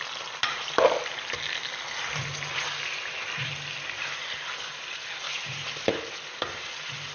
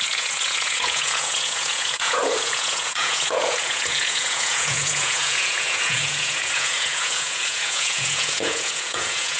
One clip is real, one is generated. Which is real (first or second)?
first